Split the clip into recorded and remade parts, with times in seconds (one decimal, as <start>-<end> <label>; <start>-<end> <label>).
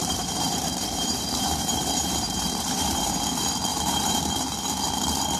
0.0-3.2 remade; 3.2-3.7 recorded; 3.7-4.2 remade; 4.2-5.4 recorded